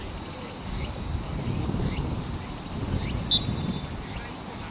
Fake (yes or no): no